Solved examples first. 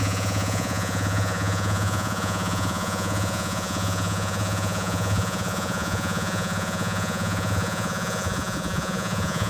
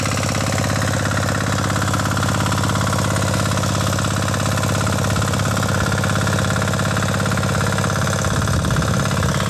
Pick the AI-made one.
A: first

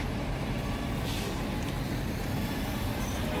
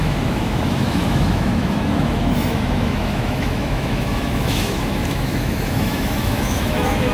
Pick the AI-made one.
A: second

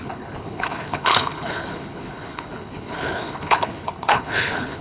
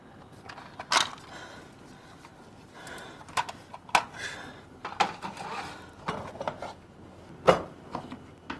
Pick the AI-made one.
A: first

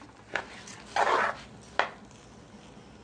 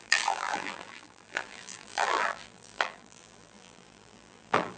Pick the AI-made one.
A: second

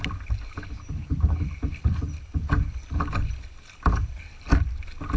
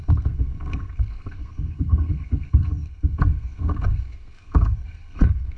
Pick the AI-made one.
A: second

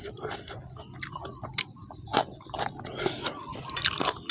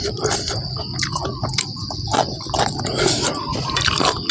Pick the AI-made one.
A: second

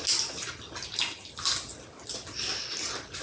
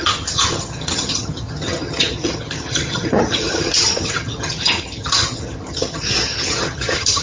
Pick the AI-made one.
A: second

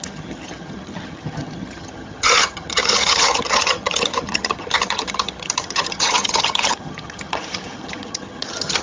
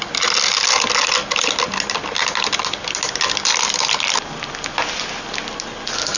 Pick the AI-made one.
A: first